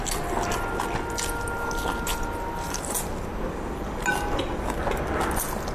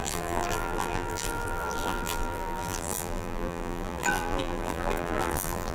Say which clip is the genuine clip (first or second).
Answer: first